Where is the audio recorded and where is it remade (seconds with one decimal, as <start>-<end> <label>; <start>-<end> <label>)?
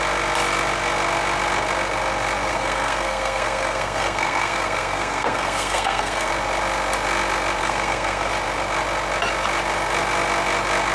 0.0-2.5 recorded; 2.5-6.3 remade; 6.3-7.6 recorded; 7.6-8.3 remade; 8.3-10.9 recorded